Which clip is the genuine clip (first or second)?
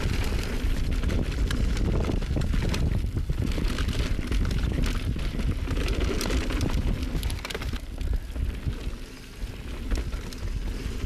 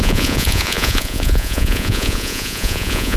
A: first